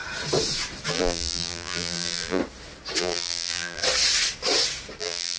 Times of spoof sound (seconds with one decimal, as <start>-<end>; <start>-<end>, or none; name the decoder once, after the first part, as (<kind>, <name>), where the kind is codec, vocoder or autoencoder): 0.9-2.4 (vocoder, BigVGAN v2); 3.0-3.8; 5.0-5.4